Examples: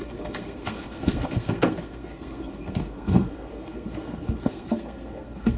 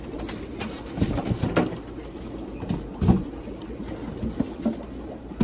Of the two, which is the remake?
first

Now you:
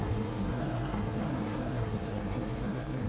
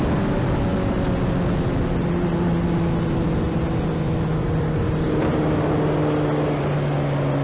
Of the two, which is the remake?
first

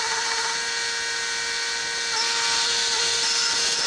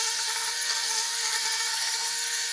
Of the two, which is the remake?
second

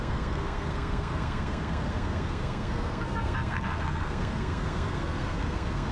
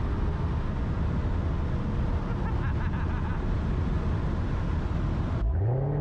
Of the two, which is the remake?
first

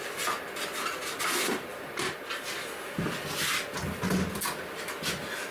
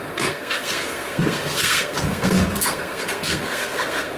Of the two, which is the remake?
second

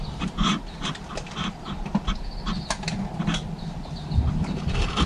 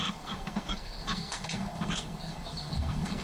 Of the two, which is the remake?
second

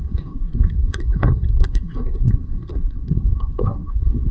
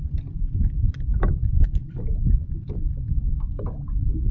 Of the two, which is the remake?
first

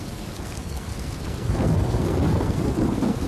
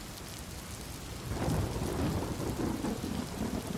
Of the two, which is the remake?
first